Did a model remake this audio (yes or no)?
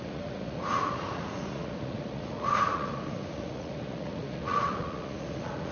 yes